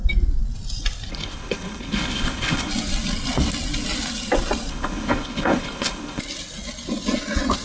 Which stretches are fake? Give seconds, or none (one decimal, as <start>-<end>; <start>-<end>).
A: 1.1-2.7; 4.7-6.2